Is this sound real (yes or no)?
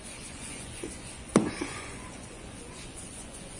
no